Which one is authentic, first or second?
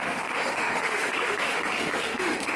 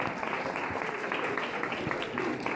second